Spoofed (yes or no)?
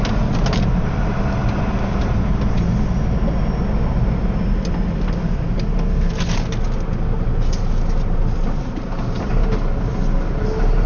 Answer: no